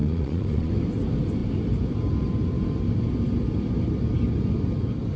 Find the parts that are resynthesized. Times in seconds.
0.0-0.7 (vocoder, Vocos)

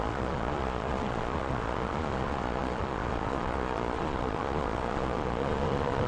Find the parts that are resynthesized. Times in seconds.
0.0-6.1 (vocoder, Vocos)